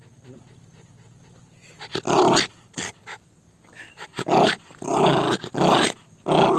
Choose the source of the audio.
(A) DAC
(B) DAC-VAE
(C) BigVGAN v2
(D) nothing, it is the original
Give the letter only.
D